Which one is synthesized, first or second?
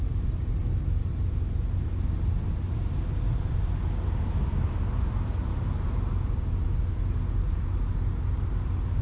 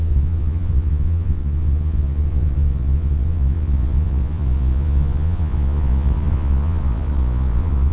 second